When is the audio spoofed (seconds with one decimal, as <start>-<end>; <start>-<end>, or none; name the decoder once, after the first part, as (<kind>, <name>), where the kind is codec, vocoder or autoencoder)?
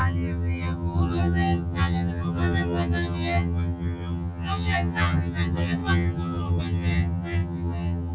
0.0-8.1 (vocoder, HiFi-GAN)